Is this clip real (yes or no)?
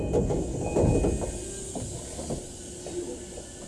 yes